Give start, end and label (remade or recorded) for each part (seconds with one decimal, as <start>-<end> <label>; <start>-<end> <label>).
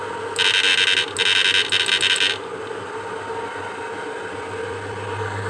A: 0.0-5.5 recorded